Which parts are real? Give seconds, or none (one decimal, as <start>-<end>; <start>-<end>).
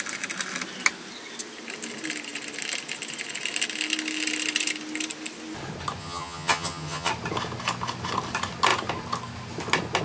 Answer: 0.0-6.0; 7.1-10.0